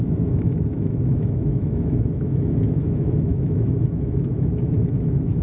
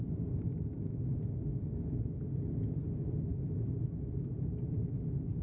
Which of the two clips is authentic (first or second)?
second